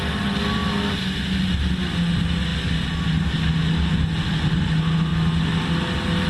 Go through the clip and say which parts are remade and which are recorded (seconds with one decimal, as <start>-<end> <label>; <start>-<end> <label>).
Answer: 0.0-6.3 recorded